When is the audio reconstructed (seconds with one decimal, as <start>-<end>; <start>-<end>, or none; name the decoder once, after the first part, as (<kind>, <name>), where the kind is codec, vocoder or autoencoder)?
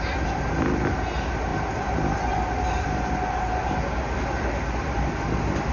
none